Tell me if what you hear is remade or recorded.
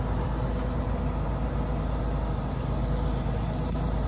recorded